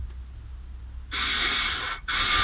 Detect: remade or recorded recorded